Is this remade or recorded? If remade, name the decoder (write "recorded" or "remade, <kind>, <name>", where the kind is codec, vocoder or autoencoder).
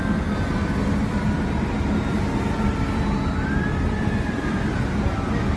recorded